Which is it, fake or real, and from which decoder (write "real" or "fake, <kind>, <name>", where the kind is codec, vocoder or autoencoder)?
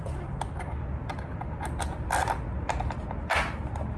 real